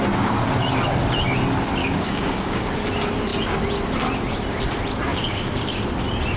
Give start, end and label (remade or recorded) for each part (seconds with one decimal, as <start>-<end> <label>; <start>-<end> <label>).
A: 0.0-1.8 recorded; 1.8-2.7 remade; 2.7-5.1 recorded; 5.1-5.8 remade; 5.8-6.4 recorded